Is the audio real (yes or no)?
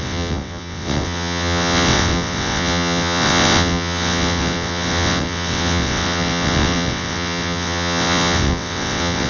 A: no